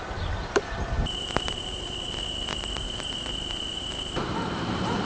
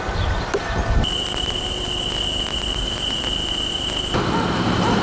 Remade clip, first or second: first